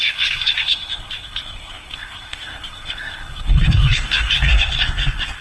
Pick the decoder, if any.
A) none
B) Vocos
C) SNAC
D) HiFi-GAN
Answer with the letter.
C